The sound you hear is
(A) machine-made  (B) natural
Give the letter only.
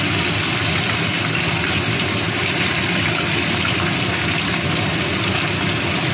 B